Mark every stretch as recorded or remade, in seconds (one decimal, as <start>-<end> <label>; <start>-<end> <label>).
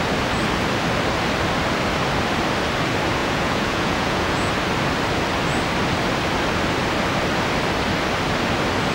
0.0-3.2 recorded; 3.2-4.5 remade; 4.5-8.9 recorded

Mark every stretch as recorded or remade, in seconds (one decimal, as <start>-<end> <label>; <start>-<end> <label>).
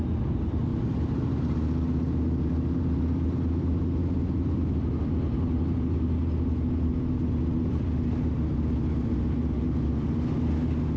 0.0-11.0 recorded